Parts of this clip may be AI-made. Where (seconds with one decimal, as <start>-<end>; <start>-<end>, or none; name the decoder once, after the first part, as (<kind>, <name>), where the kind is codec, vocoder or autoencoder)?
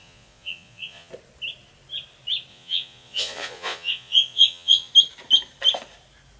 0.0-1.1 (vocoder, Vocos); 2.5-4.9